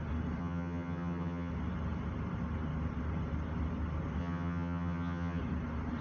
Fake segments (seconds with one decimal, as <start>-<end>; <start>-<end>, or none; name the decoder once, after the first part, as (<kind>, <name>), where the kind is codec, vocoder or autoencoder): 0.4-1.5 (vocoder, HiFi-GAN); 4.2-5.4